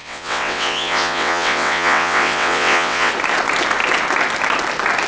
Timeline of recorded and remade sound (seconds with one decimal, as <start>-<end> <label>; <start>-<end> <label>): 0.0-3.1 remade; 3.1-5.1 recorded